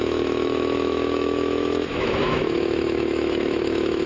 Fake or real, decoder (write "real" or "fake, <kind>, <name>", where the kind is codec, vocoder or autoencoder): fake, autoencoder, DAC-VAE